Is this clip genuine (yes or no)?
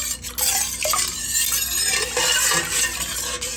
yes